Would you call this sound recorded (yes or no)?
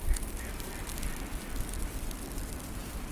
no